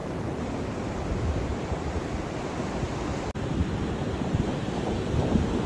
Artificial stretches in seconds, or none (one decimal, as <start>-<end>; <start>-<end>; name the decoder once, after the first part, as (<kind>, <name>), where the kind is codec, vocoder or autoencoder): 0.0-2.1 (vocoder, BigVGAN v2); 3.6-5.0